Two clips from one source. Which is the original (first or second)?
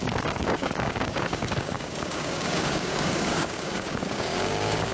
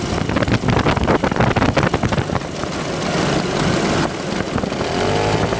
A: second